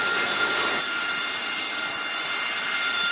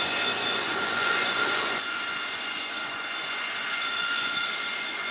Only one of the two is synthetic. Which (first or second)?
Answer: second